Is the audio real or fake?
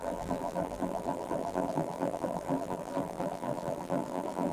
fake